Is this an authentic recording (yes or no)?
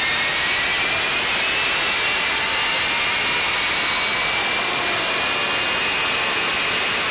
yes